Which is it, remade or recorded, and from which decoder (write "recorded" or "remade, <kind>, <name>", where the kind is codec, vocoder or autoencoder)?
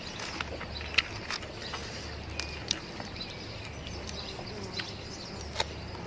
recorded